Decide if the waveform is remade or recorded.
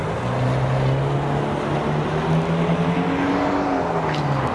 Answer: recorded